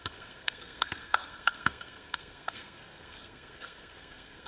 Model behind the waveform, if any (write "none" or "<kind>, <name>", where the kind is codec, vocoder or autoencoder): codec, SNAC